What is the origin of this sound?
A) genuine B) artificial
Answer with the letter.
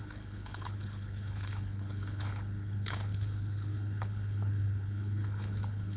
B